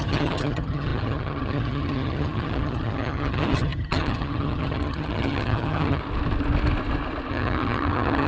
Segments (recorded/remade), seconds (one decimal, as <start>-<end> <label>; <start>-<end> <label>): 0.0-6.0 remade; 6.0-7.3 recorded; 7.3-8.3 remade